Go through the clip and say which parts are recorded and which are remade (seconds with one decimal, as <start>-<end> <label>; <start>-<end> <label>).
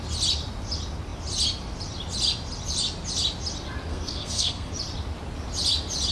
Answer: 0.0-3.9 recorded; 3.9-4.7 remade; 4.7-6.1 recorded